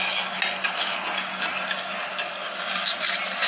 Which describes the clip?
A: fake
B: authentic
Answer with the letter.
B